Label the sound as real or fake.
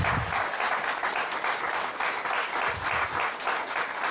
real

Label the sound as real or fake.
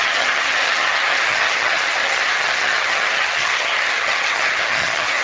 fake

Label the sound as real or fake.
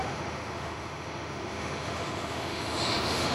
fake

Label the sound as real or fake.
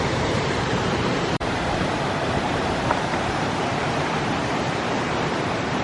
fake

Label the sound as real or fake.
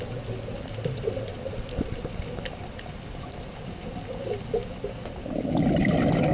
real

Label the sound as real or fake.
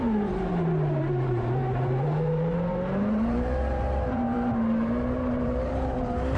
fake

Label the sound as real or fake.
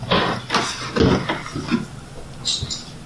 real